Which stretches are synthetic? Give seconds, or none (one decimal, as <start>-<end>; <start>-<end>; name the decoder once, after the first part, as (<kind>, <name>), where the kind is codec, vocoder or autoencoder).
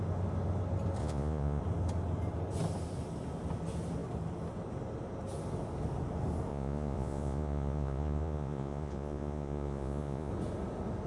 1.0-1.6 (vocoder, Vocos); 6.5-10.3